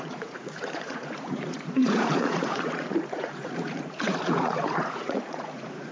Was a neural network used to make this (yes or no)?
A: yes